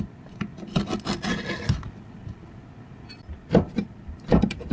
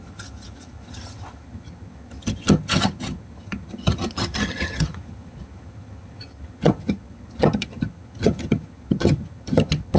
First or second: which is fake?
second